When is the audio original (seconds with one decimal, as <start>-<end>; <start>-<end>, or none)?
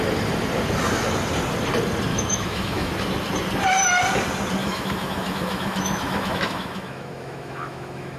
0.0-2.1; 2.9-4.6